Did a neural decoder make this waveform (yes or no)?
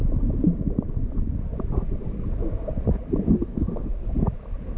no